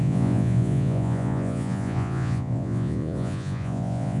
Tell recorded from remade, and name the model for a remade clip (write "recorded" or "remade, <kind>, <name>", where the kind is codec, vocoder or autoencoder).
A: remade, vocoder, Vocos